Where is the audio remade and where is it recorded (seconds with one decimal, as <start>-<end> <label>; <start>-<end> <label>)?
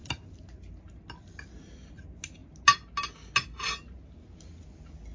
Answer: 0.0-5.1 recorded